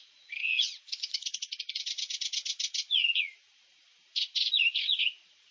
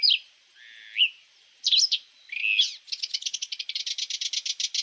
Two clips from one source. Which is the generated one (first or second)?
first